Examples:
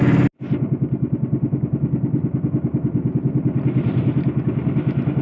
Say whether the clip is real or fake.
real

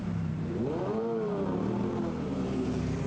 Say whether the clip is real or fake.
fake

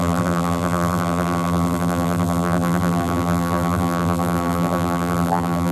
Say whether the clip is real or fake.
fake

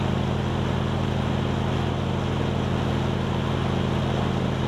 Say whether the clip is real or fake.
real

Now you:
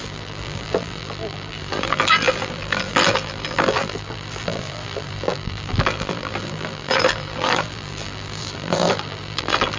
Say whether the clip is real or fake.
fake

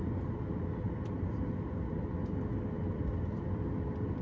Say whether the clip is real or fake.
real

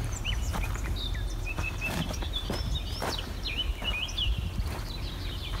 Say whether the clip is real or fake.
fake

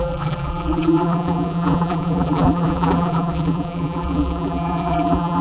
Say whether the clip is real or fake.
fake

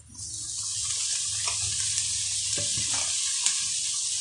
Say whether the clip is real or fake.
real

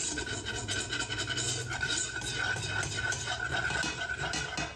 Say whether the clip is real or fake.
real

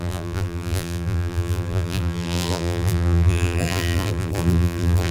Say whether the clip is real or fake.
fake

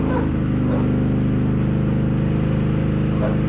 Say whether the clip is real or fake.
real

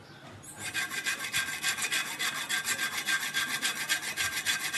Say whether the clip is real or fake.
real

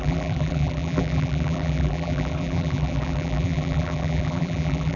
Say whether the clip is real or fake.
fake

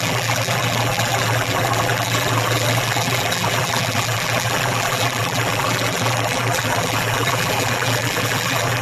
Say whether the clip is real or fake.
fake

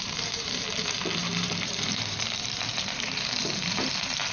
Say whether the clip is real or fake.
fake